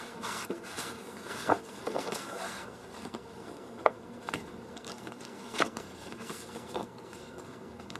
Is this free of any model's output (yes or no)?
no